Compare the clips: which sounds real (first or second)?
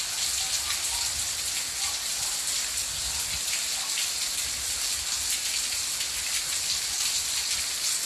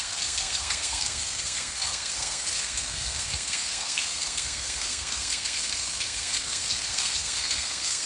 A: first